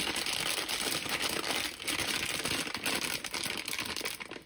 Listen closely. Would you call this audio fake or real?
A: real